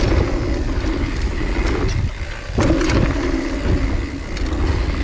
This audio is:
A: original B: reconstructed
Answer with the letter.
A